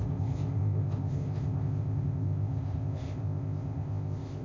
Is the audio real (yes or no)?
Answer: no